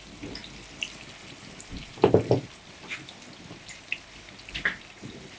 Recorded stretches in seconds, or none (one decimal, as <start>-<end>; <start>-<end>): 0.0-0.4; 1.4-1.9